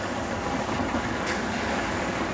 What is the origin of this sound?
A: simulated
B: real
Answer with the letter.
A